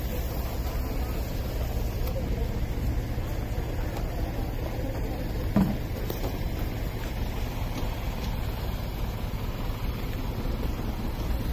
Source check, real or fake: real